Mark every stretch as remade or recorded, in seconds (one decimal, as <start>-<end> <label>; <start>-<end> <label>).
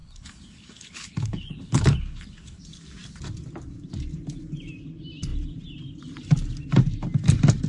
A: 0.0-2.6 remade; 2.6-7.7 recorded